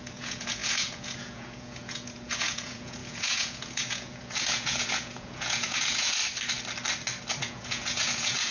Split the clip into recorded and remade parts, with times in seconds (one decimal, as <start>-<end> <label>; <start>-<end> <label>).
0.0-6.2 remade; 6.2-7.4 recorded; 7.4-8.5 remade